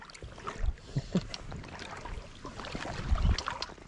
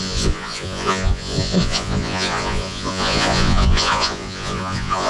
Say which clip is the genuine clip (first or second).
first